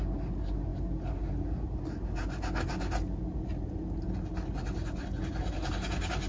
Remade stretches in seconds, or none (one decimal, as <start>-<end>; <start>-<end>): none